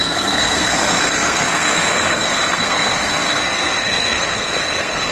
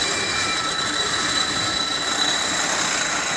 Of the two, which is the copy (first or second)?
first